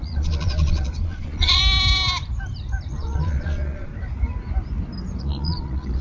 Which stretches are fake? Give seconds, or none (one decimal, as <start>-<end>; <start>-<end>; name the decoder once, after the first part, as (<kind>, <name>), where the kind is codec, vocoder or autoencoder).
0.0-1.6 (vocoder, Vocos); 2.9-3.9; 5.2-6.0